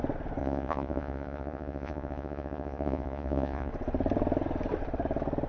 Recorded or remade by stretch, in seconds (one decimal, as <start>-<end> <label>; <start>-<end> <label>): 0.0-0.4 recorded; 0.4-3.7 remade; 3.7-5.5 recorded